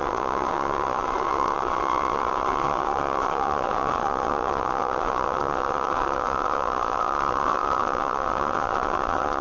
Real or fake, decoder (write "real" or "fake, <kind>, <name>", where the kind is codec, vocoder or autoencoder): fake, vocoder, WaveNeXt